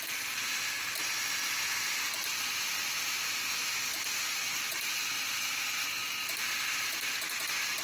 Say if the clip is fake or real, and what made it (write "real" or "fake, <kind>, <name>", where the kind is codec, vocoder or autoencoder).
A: real